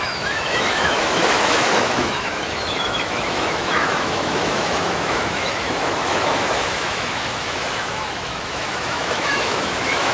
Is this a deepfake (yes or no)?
yes